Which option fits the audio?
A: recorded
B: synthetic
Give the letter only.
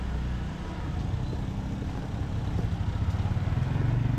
A